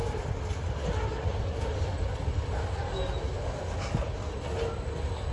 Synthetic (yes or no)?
no